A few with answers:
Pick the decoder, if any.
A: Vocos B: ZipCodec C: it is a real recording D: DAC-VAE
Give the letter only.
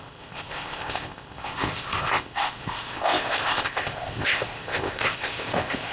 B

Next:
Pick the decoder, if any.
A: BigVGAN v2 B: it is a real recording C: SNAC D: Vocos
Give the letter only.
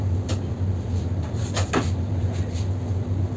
B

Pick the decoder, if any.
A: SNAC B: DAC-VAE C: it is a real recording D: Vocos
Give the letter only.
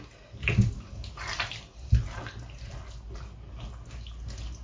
C